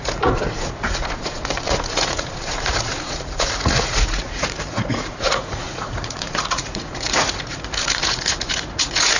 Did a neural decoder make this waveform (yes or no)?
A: yes